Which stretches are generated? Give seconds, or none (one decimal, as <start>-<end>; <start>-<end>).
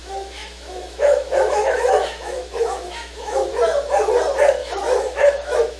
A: 0.0-3.5; 4.6-5.8